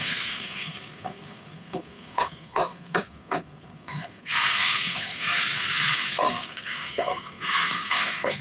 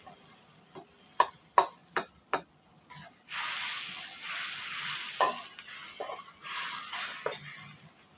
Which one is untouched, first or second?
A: second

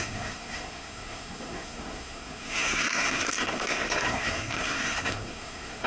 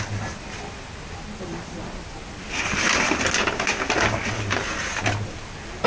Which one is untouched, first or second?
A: second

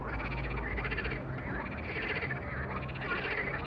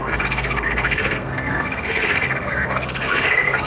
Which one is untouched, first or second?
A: first